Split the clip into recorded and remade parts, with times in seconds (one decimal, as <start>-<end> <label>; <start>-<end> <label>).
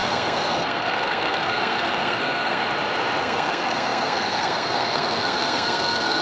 0.0-2.6 remade; 2.6-3.2 recorded; 3.2-6.2 remade